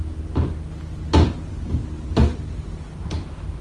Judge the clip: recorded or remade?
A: recorded